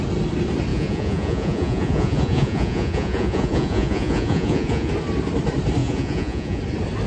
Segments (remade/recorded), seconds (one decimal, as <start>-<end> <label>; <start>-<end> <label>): 0.0-0.7 recorded; 0.7-4.9 remade; 4.9-5.8 recorded; 5.8-6.6 remade; 6.6-7.1 recorded